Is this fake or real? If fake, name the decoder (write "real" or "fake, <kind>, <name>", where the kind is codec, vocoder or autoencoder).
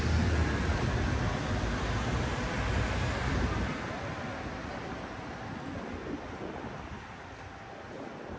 real